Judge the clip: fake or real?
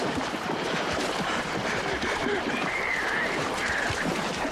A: fake